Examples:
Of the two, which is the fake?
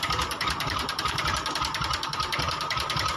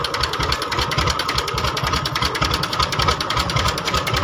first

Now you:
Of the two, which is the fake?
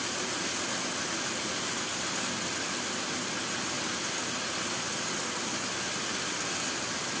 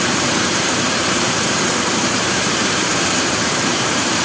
second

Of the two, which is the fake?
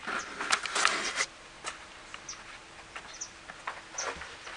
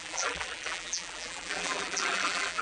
second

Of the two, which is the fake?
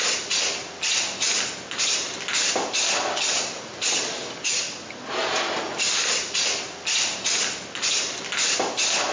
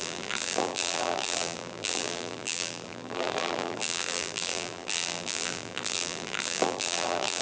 second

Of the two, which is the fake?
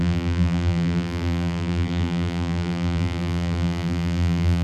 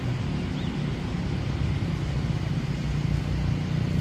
first